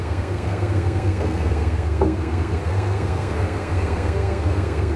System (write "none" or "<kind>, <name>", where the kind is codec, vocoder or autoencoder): codec, SNAC